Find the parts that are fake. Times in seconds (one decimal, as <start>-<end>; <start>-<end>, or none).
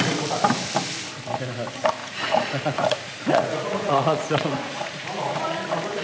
2.0-5.6